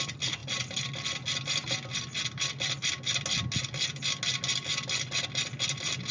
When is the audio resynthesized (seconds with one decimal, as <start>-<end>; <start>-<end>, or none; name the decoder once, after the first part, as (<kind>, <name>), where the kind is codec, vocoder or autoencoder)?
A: none